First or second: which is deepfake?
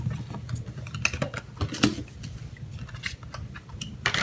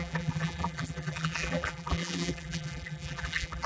second